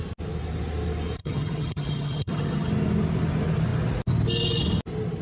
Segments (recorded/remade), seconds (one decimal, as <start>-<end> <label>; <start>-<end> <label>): 0.0-1.2 recorded; 1.2-2.7 remade; 2.7-5.2 recorded